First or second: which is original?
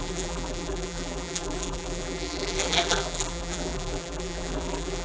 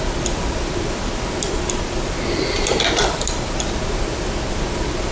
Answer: second